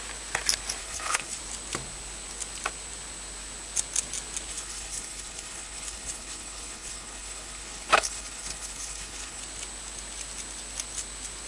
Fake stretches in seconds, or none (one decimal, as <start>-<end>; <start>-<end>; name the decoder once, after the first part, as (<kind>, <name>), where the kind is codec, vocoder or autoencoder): 0.8-1.4 (codec, HILCodec); 4.5-9.4